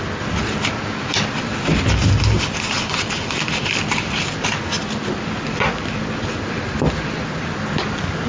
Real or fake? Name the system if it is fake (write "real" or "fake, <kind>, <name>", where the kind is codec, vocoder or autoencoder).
real